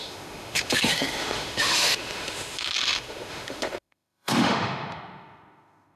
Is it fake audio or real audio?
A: fake